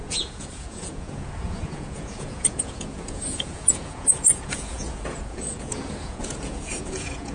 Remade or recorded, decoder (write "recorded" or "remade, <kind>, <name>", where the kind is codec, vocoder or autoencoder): remade, vocoder, Vocos